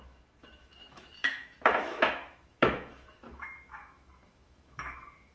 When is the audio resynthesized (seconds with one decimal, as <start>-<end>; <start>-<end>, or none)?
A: 0.0-5.3